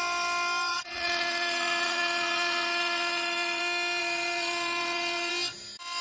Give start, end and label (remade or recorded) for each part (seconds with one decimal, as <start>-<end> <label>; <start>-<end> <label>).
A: 0.0-0.7 recorded; 0.7-3.6 remade; 3.6-4.0 recorded; 4.0-5.3 remade; 5.3-6.0 recorded